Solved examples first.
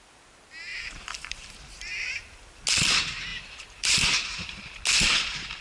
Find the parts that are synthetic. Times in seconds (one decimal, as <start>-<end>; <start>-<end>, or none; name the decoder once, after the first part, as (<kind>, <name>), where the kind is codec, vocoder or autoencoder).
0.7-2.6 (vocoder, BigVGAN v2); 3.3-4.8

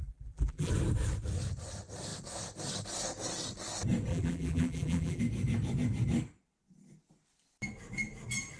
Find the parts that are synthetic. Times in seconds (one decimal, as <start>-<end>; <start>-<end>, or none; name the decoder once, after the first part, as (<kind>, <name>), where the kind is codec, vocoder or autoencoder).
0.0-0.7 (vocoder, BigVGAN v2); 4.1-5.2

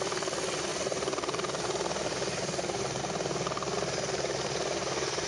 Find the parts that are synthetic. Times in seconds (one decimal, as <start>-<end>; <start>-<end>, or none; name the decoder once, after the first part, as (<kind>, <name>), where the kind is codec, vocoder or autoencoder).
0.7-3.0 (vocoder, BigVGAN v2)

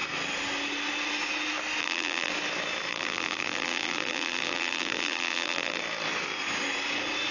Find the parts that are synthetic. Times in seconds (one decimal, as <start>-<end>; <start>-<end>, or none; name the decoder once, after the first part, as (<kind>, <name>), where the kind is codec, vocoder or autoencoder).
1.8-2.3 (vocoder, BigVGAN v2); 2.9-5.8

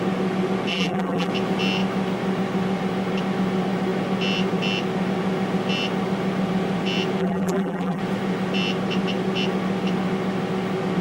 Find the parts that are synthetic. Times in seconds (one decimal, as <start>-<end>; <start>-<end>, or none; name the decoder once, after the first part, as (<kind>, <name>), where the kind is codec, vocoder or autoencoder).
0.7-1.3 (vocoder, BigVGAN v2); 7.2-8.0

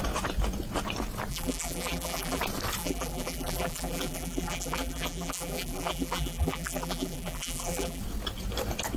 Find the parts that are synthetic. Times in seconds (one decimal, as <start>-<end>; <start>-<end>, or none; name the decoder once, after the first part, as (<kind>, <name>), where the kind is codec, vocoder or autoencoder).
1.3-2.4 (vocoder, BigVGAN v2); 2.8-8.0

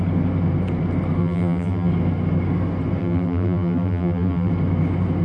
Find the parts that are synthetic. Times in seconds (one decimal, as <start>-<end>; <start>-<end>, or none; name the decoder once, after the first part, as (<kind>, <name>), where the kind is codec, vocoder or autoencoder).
1.2-1.9 (vocoder, BigVGAN v2); 3.0-4.5

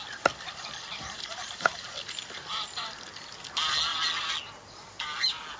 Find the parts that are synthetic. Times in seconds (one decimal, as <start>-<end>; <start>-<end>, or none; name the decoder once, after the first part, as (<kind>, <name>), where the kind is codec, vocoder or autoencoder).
1.0-1.8 (vocoder, BigVGAN v2)